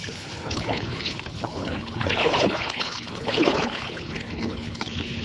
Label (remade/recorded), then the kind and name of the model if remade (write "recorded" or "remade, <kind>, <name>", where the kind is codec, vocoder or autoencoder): remade, codec, HILCodec